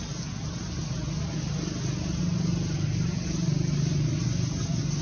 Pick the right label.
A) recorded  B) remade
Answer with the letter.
A